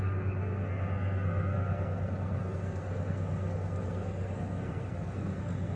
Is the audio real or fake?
fake